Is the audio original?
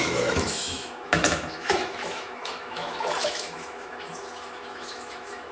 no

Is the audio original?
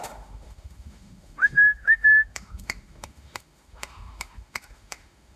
no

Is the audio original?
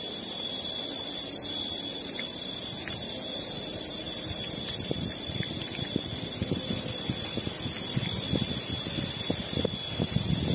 yes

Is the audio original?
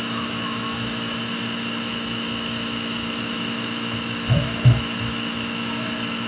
no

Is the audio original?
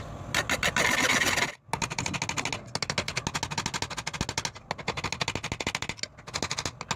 yes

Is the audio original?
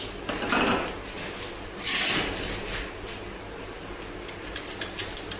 yes